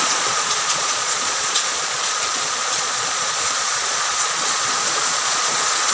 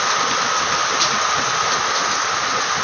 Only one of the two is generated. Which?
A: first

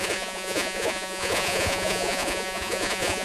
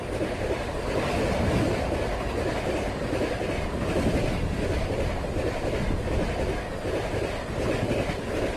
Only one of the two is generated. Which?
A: first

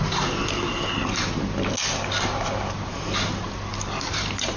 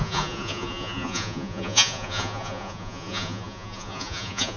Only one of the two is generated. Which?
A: second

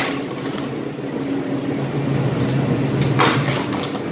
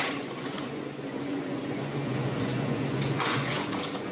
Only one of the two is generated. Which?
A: second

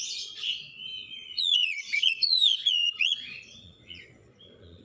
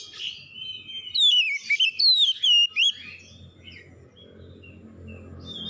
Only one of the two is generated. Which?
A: first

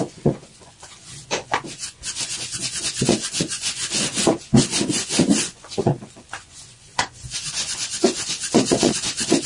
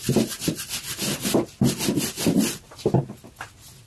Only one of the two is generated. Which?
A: first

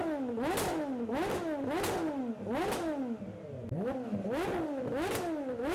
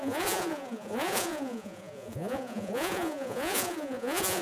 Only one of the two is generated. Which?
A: second